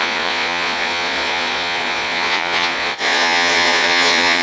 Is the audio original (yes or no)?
no